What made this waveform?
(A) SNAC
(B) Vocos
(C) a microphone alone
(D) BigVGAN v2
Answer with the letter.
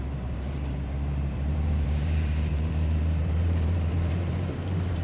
D